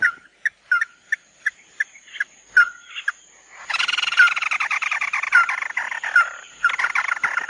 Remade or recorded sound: recorded